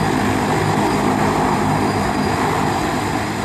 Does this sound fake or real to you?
real